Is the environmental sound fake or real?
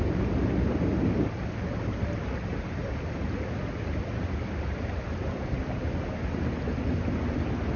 real